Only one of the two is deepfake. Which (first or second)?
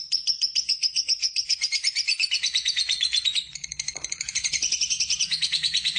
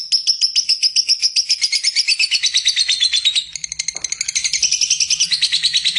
first